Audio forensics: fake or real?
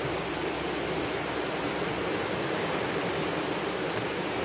real